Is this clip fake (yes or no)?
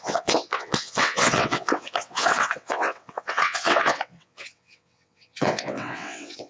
yes